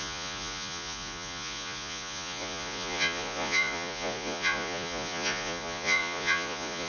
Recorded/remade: remade